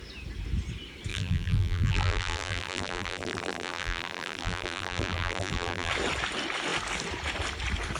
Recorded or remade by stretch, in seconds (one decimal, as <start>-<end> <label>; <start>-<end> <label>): 0.0-1.1 recorded; 1.1-5.9 remade; 5.9-8.0 recorded